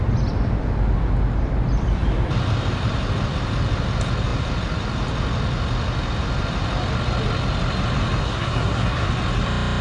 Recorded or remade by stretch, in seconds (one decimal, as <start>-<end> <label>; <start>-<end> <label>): 0.0-8.2 recorded; 8.2-9.1 remade; 9.1-9.8 recorded